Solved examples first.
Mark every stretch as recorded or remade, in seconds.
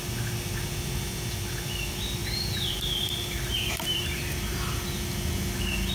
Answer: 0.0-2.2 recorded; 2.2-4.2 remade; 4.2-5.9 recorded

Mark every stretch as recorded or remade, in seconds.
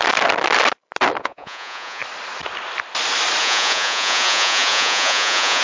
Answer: 0.0-1.2 recorded; 1.2-2.0 remade; 2.0-3.4 recorded; 3.4-5.6 remade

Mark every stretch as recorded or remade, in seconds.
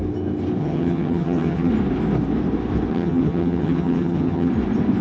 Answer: 0.0-0.6 recorded; 0.6-1.7 remade; 1.7-2.9 recorded; 2.9-4.5 remade; 4.5-5.0 recorded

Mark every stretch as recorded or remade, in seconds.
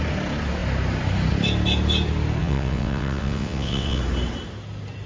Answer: 0.0-2.4 recorded; 2.4-4.0 remade; 4.0-5.1 recorded